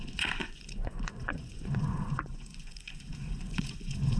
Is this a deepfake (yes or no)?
yes